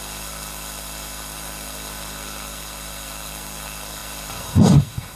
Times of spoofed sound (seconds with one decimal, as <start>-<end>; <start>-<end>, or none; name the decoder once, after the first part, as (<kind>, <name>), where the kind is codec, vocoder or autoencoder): 0.0-5.2 (codec, SNAC)